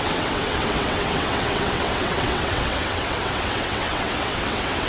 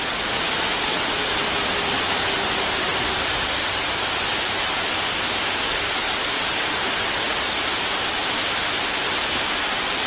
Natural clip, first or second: second